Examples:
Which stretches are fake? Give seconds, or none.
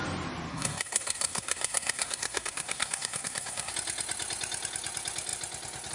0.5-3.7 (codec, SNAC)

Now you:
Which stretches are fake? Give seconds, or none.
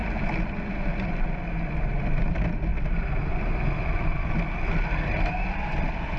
none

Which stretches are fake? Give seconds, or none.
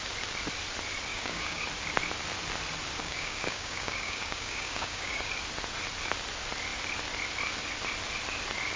1.1-1.6 (codec, DAC); 3.0-5.3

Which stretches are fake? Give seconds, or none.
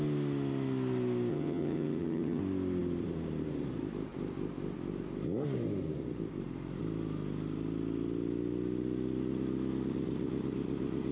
1.3-2.4 (vocoder, HiFi-GAN)